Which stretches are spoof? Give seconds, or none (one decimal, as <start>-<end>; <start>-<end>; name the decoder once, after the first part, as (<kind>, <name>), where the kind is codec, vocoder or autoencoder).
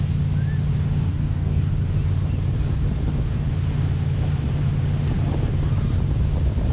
1.1-1.7 (codec, DAC)